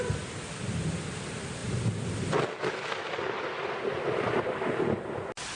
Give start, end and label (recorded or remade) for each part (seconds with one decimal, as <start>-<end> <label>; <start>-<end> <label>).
0.0-5.6 recorded